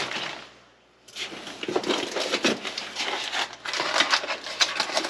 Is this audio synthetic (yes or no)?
no